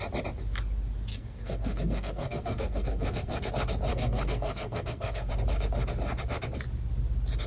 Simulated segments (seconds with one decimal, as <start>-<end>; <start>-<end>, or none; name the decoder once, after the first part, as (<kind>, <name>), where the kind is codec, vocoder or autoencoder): 1.1-3.5 (codec, SNAC); 3.9-5.3